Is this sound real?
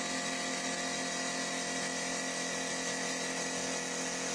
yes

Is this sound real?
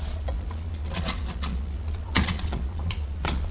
no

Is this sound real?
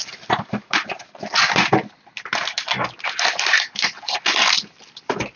yes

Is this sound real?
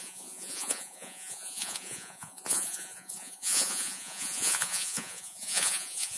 no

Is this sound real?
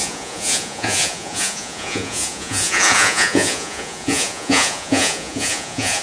no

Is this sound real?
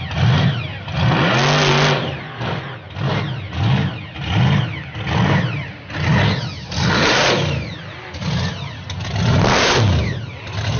yes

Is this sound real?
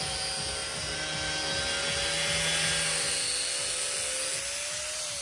yes